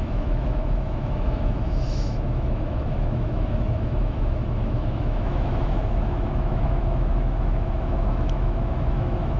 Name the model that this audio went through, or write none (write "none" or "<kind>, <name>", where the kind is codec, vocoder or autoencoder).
autoencoder, DAC-VAE